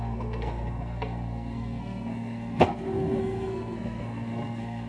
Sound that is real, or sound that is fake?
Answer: fake